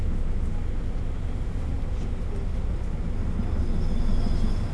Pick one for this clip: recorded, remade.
recorded